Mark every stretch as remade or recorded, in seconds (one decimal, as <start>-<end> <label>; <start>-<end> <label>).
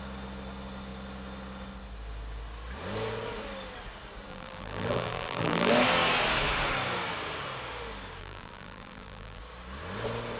0.0-4.3 recorded; 4.3-5.7 remade; 5.7-8.2 recorded; 8.2-9.4 remade; 9.4-10.4 recorded